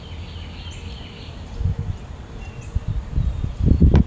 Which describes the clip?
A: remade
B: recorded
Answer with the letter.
B